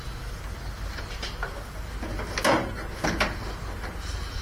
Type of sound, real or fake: real